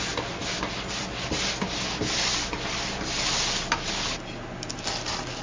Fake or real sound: real